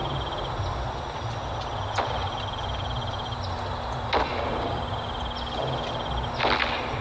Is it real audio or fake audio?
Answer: real